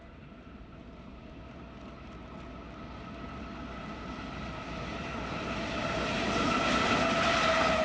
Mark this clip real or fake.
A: real